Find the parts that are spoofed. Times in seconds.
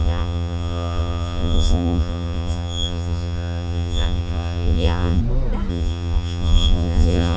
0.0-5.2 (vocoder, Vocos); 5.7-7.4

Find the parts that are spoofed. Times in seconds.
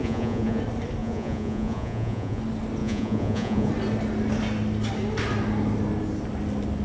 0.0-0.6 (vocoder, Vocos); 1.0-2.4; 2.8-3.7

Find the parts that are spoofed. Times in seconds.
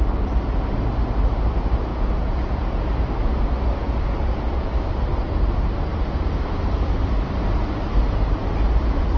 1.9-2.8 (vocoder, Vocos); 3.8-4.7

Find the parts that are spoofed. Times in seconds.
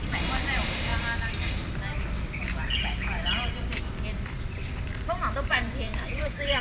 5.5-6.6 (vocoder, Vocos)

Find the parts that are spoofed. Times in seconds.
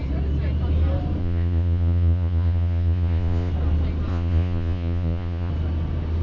1.2-3.5 (vocoder, Vocos); 4.1-5.5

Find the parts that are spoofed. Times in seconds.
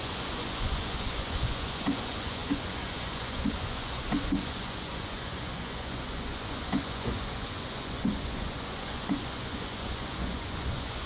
0.0-11.1 (vocoder, Vocos)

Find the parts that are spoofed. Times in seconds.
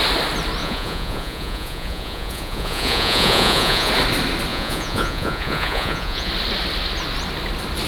0.6-3.9 (vocoder, Vocos); 4.5-6.3